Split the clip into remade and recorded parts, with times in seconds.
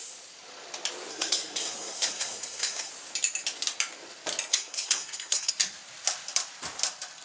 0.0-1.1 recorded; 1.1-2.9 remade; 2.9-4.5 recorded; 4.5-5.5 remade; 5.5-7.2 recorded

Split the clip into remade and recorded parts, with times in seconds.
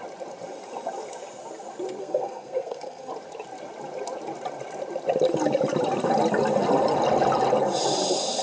0.0-2.0 recorded; 2.0-3.1 remade; 3.1-8.4 recorded